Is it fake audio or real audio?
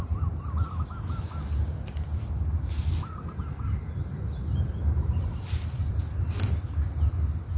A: real